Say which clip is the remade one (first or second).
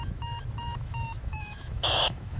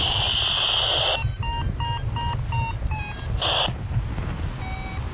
first